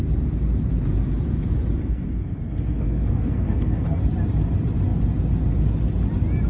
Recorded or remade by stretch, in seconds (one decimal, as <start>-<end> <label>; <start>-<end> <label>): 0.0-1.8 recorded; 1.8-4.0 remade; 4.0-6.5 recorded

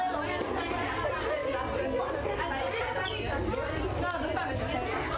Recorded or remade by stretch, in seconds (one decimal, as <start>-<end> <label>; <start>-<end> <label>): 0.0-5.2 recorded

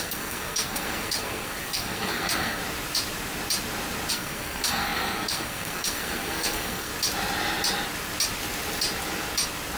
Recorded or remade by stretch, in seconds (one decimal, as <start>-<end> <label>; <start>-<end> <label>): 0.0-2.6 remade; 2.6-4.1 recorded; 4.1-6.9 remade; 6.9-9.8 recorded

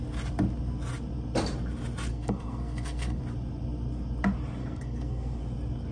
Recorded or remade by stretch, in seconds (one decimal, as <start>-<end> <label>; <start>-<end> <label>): 0.0-2.1 recorded; 2.1-3.2 remade; 3.2-4.6 recorded; 4.6-5.4 remade; 5.4-5.9 recorded

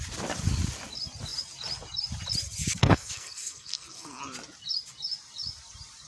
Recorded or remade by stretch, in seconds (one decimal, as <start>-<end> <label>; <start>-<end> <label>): 0.0-2.8 recorded; 2.8-4.2 remade; 4.2-6.1 recorded

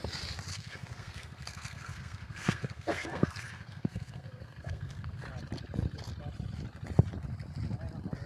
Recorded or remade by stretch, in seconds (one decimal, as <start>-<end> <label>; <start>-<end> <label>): 0.0-0.5 recorded; 0.5-5.2 remade; 5.2-8.3 recorded